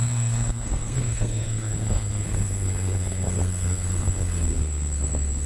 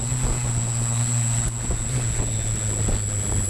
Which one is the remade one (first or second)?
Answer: first